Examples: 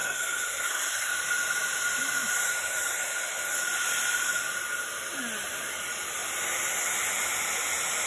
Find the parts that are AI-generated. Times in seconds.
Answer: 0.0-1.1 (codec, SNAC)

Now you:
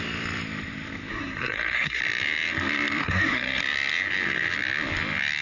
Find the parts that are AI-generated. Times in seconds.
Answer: 1.1-2.0 (codec, SNAC); 3.0-3.6

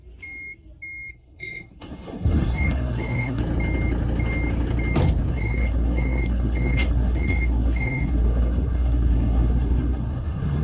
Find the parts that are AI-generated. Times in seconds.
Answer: 1.1-3.4 (codec, SNAC); 5.3-10.6